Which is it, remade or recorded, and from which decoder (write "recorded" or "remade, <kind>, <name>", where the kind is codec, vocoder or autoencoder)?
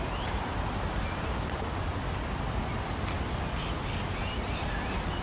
recorded